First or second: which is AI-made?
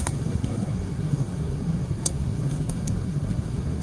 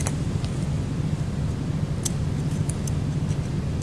first